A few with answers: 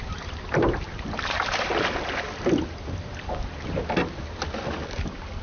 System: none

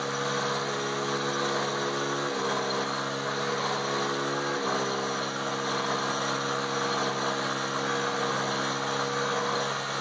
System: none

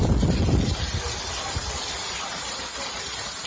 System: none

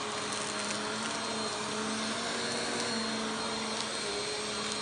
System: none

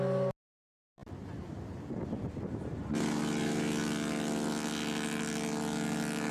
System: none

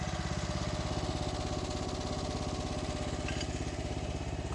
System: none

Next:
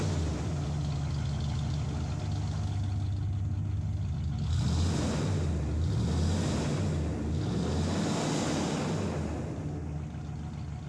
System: none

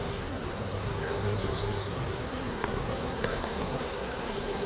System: codec, SNAC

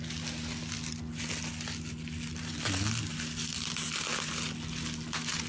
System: none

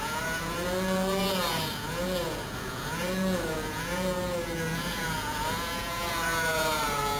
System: vocoder, Vocos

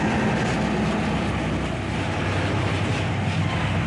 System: none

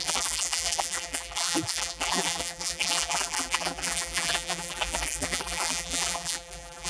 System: vocoder, BigVGAN v2